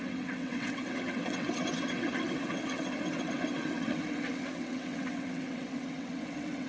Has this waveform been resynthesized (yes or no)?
yes